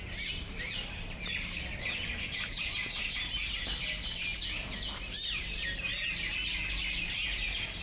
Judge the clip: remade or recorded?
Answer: recorded